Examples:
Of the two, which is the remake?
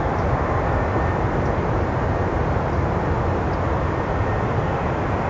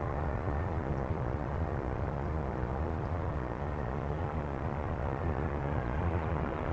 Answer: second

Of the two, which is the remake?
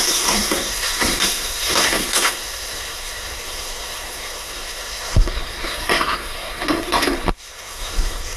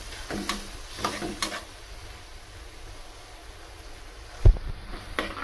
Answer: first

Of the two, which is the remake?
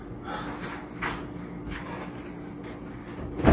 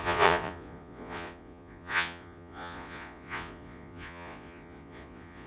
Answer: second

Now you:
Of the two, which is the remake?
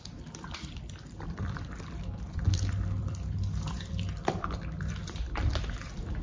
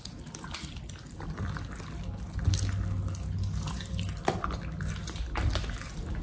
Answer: first